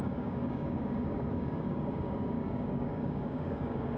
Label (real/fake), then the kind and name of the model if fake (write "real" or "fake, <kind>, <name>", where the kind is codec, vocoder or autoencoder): fake, codec, DAC